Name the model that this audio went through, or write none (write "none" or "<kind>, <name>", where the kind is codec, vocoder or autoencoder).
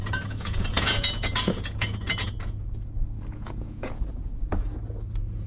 vocoder, Vocos